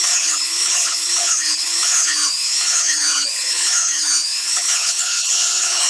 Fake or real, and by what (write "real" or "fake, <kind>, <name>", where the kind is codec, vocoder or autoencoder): fake, codec, HILCodec